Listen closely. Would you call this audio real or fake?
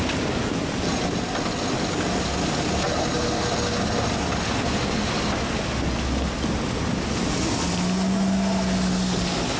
real